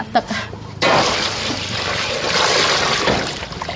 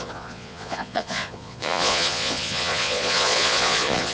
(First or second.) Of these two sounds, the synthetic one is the second